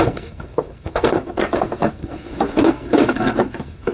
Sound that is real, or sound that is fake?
fake